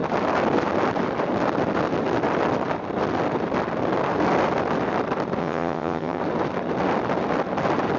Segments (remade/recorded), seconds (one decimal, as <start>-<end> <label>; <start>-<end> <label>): 0.0-5.4 recorded; 5.4-6.2 remade; 6.2-8.0 recorded